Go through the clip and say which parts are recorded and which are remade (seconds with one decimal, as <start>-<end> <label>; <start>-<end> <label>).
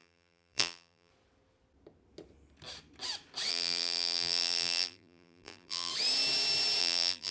0.0-1.1 remade; 1.1-3.5 recorded; 3.5-5.9 remade; 5.9-6.8 recorded; 6.8-7.3 remade